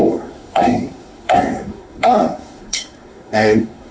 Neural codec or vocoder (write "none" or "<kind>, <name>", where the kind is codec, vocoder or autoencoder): codec, SNAC